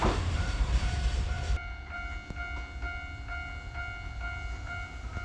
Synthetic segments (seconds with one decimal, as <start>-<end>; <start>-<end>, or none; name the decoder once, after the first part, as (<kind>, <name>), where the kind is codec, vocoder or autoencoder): 0.0-2.1 (vocoder, BigVGAN v2)